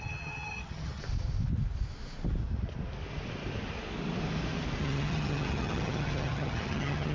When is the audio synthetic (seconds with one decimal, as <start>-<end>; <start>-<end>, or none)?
0.0-1.0; 4.8-7.1